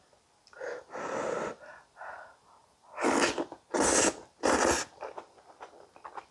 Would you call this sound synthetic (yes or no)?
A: no